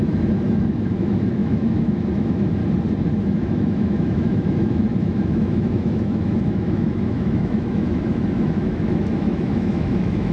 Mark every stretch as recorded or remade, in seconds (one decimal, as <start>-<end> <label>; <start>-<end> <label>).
0.0-2.6 remade; 2.6-3.2 recorded; 3.2-10.3 remade